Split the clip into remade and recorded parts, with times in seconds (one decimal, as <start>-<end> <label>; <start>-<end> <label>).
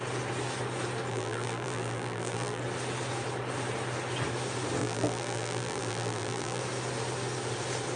0.0-1.1 recorded; 1.1-2.6 remade; 2.6-4.8 recorded; 4.8-6.6 remade; 6.6-8.0 recorded